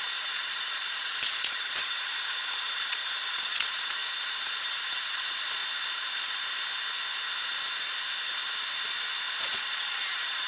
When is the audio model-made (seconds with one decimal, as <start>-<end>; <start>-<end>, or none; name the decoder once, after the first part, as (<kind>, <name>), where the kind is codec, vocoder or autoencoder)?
0.0-4.0 (vocoder, Vocos); 4.6-5.6; 9.4-10.5